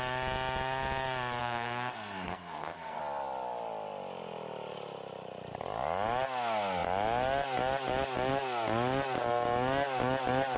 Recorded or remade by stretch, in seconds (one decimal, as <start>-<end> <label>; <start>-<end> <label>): 0.0-1.4 recorded; 1.4-3.0 remade; 3.0-10.6 recorded